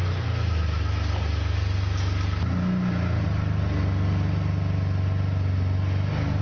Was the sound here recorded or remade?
recorded